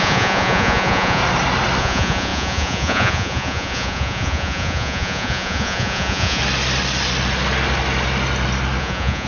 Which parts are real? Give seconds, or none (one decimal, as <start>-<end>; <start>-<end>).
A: 1.2-1.8; 6.4-8.8